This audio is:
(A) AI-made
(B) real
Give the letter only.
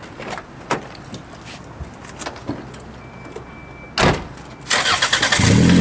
B